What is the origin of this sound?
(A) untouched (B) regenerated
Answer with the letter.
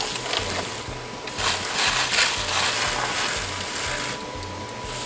A